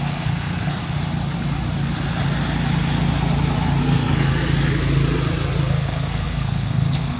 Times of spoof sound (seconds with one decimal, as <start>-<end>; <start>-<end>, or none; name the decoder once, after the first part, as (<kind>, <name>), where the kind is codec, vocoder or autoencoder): 0.0-0.8 (codec, SNAC); 3.8-4.3; 5.7-7.2